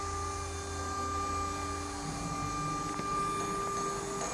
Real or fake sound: real